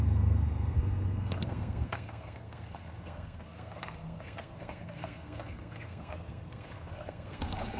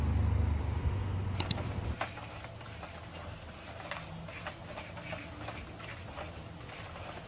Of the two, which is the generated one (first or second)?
first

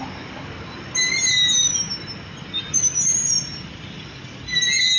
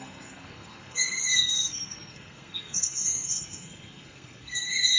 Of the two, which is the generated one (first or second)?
second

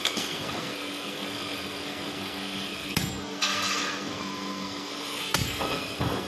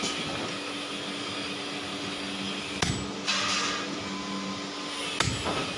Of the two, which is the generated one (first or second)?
first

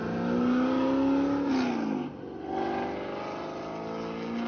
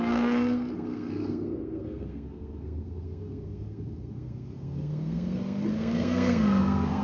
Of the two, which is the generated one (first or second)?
second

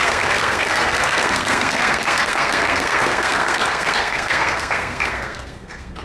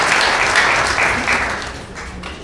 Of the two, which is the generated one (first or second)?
first